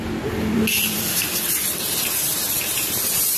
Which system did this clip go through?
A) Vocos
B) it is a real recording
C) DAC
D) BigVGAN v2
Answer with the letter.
D